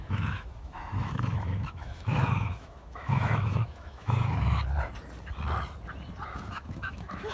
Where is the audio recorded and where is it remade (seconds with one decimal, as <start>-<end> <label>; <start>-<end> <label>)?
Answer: 0.0-4.6 remade; 4.6-6.3 recorded; 6.3-7.3 remade